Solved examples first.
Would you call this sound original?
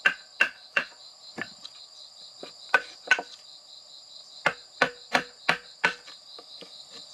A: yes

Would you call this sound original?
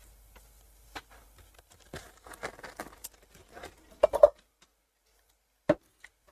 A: yes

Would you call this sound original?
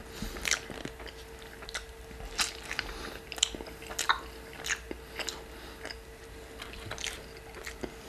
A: yes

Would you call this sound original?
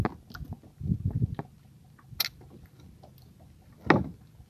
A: yes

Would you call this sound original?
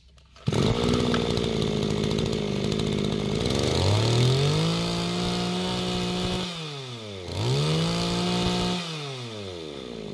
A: yes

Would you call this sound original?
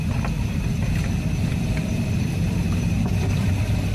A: no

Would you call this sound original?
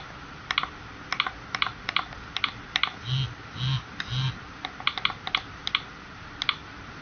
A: yes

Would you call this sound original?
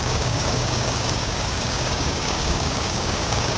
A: no